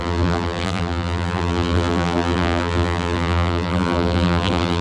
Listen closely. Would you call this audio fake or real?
fake